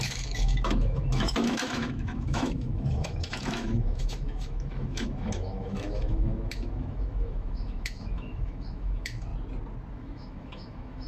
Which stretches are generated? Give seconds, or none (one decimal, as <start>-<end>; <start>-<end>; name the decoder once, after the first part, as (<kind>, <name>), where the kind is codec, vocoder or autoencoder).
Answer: 0.0-9.3 (autoencoder, DAC-VAE); 9.9-11.1